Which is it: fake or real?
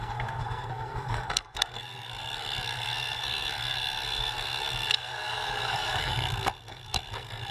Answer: fake